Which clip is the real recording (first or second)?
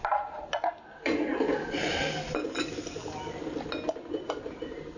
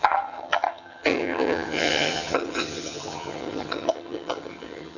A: first